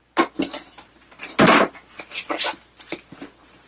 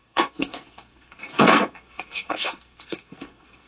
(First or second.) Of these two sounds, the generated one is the second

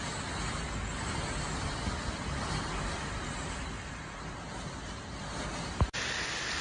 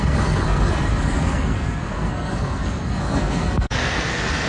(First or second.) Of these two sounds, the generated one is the second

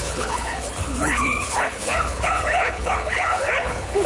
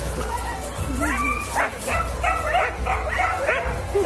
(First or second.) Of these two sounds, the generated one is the first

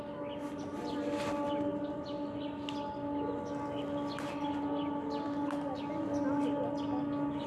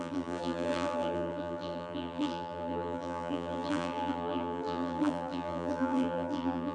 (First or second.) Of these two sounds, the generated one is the second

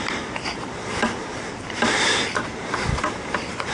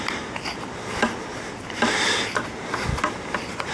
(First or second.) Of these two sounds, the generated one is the first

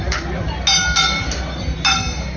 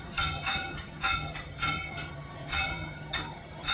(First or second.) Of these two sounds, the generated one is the second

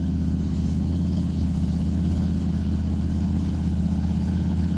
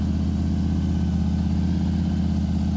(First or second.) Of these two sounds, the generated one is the first